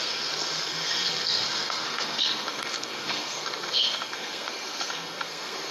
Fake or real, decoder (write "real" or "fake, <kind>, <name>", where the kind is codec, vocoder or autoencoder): fake, codec, SNAC